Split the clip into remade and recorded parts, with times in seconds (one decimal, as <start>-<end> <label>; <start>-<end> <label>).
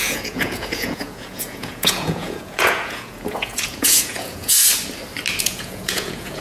0.0-4.7 remade; 4.7-5.4 recorded; 5.4-6.4 remade